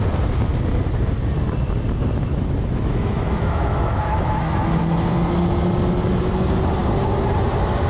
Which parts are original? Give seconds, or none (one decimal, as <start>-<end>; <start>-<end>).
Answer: 0.0-2.3; 4.8-7.9